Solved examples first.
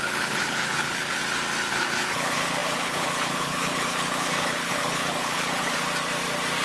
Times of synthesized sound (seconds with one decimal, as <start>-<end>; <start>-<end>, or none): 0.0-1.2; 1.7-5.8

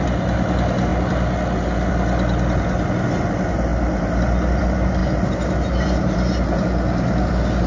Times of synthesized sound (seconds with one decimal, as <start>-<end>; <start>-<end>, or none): none

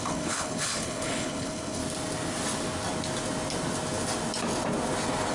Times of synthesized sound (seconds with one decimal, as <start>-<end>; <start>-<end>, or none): 0.0-1.8